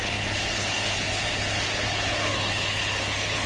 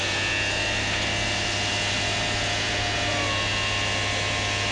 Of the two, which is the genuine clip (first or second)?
second